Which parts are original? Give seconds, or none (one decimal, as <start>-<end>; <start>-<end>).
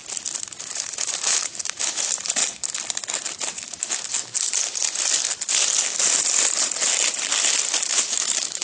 0.0-0.6; 2.4-3.5; 4.1-7.8